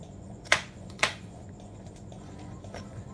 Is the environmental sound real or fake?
fake